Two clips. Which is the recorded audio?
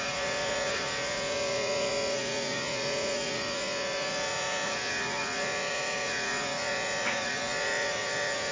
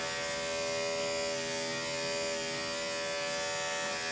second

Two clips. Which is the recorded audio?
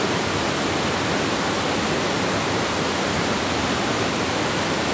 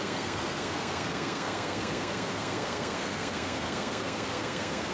first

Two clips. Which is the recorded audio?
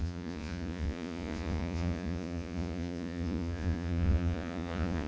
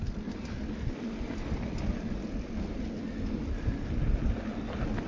second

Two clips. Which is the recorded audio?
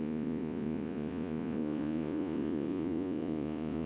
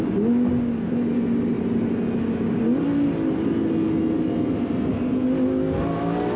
second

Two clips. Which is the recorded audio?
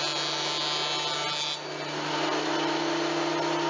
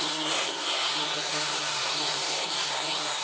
first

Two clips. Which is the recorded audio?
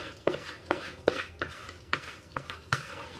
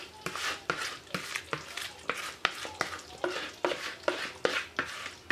second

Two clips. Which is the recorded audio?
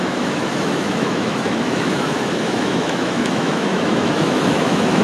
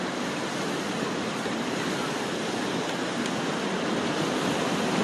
second